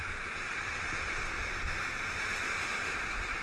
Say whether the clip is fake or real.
fake